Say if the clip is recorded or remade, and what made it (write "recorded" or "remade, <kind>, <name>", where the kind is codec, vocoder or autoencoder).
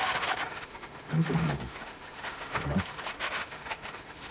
remade, autoencoder, DAC-VAE